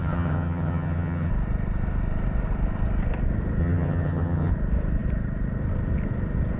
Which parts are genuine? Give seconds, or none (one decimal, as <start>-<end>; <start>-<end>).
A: 1.3-3.6; 4.5-6.6